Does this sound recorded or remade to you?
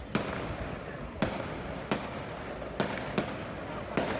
recorded